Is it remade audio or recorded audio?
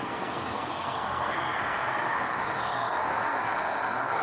remade